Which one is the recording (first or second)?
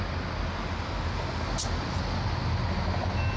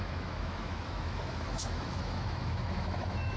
first